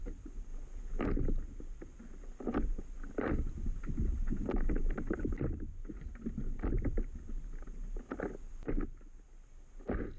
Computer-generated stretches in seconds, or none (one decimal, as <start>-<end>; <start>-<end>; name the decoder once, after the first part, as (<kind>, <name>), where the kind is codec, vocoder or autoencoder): none